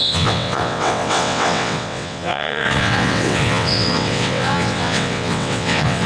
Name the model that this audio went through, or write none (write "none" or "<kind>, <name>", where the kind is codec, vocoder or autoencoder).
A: vocoder, WaveNeXt